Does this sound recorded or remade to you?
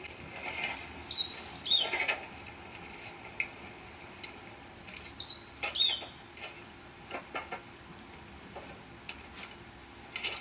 recorded